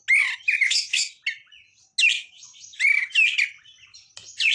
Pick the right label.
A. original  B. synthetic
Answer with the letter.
A